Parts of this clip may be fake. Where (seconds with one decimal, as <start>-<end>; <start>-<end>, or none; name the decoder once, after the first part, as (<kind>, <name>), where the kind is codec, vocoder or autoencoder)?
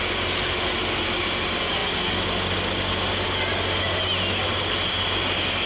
none